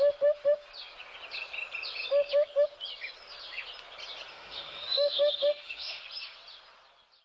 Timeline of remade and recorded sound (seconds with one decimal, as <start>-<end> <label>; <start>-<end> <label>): 0.0-4.3 recorded; 4.3-6.0 remade; 6.0-7.2 recorded